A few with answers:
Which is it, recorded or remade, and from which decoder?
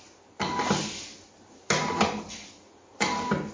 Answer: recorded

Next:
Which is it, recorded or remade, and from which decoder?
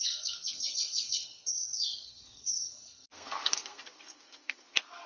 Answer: remade, codec, SNAC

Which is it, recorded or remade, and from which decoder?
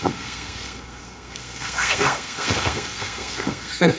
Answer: remade, codec, SNAC